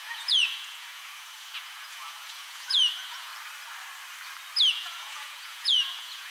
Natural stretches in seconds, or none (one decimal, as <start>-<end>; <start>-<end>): 3.3-4.7